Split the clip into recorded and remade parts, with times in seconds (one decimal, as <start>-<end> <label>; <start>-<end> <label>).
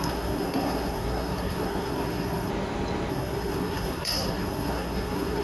0.0-2.5 remade; 2.5-3.1 recorded; 3.1-5.4 remade